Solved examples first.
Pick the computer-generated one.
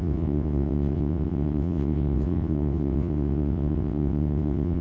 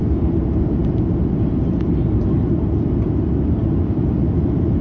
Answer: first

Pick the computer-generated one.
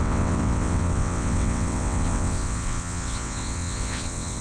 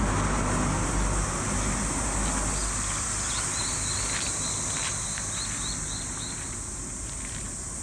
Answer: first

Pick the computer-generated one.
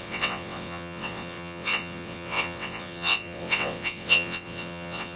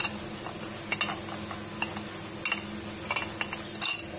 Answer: first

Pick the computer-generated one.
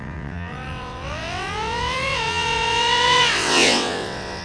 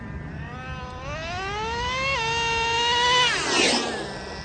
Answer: first